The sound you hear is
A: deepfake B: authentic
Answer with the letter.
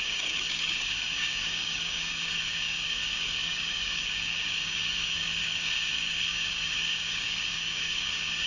A